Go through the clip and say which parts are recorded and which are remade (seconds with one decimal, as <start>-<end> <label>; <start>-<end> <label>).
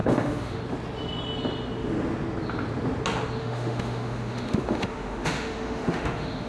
0.0-0.6 remade; 0.6-3.4 recorded; 3.4-6.5 remade